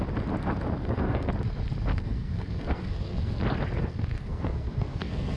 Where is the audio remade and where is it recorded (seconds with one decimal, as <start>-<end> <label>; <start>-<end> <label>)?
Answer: 0.0-0.8 recorded; 0.8-1.3 remade; 1.3-1.9 recorded; 1.9-3.4 remade; 3.4-3.8 recorded; 3.8-5.4 remade